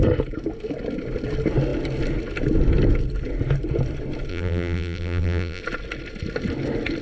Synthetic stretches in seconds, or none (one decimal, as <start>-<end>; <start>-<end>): 4.3-5.6